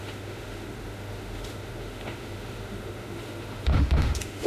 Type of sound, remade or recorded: remade